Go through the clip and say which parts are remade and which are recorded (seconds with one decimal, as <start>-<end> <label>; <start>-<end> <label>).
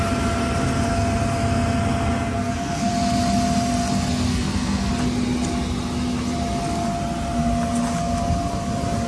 0.0-2.3 recorded; 2.3-2.9 remade; 2.9-4.3 recorded; 4.3-4.9 remade; 4.9-9.1 recorded